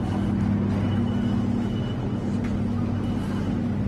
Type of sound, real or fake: real